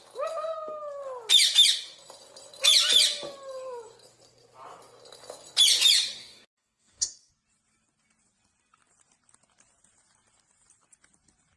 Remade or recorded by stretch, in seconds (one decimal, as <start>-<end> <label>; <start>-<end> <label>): 0.0-6.2 recorded; 6.2-7.3 remade; 7.3-11.6 recorded